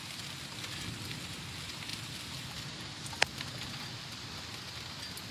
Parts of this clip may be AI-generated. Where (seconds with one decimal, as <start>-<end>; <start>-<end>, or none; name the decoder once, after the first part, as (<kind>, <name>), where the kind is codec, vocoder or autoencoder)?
none